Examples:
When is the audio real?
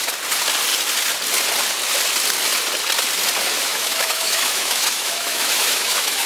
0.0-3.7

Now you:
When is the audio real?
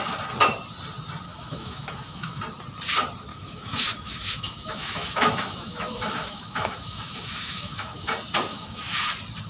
0.0-1.3; 2.4-3.3; 8.1-8.5; 9.1-9.5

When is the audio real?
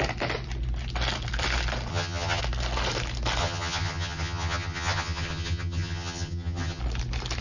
0.0-1.9; 2.4-3.4; 6.8-7.4